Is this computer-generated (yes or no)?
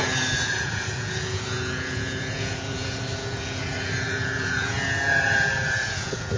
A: yes